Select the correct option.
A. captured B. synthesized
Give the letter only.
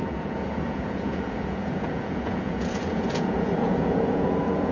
B